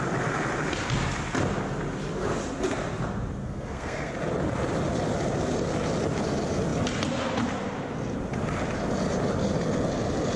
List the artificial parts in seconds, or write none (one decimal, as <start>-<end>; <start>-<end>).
3.4-4.1